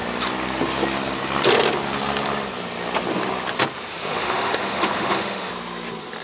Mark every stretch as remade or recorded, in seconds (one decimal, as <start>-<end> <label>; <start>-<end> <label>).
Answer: 0.0-3.9 recorded; 3.9-5.5 remade; 5.5-6.2 recorded